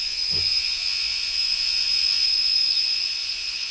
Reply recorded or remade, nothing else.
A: remade